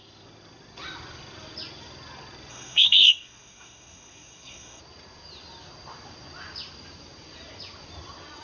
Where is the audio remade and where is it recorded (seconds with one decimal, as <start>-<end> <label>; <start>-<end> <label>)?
0.0-2.5 recorded; 2.5-4.8 remade; 4.8-8.4 recorded